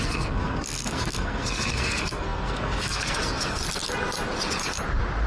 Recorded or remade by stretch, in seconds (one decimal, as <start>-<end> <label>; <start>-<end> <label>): 0.0-3.6 remade; 3.6-5.3 recorded

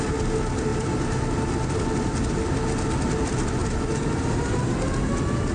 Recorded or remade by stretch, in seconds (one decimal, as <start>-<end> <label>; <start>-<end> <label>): 0.0-5.5 recorded

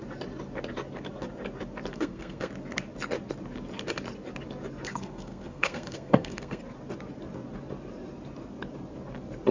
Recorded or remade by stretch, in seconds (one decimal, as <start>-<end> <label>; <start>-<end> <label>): 0.0-1.9 recorded; 1.9-2.5 remade; 2.5-4.9 recorded; 4.9-6.6 remade; 6.6-9.5 recorded

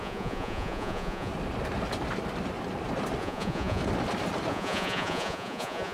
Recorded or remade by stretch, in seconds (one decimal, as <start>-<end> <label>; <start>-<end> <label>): 0.0-1.3 remade; 1.3-3.2 recorded; 3.2-3.8 remade; 3.8-4.5 recorded; 4.5-5.9 remade

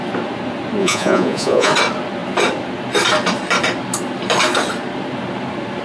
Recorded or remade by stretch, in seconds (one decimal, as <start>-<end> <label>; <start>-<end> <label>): 0.0-0.8 recorded; 0.8-1.7 remade; 1.7-5.8 recorded